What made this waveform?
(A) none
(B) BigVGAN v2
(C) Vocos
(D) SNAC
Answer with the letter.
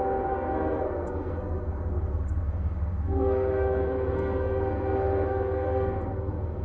D